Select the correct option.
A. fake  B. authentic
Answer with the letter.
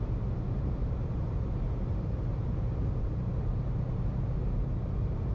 A